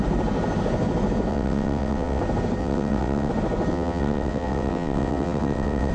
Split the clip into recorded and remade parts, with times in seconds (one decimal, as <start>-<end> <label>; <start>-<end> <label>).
0.0-1.3 recorded; 1.3-2.2 remade; 2.2-2.6 recorded; 2.6-3.3 remade; 3.3-3.7 recorded; 3.7-5.9 remade